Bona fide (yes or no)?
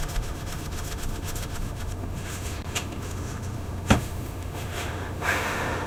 no